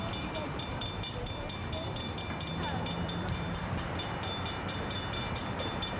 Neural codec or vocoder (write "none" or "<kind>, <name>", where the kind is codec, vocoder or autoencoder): vocoder, BigVGAN v2